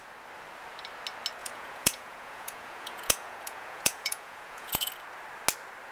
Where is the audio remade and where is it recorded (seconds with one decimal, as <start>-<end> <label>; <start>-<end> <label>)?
0.0-1.4 recorded; 1.4-4.9 remade; 4.9-5.9 recorded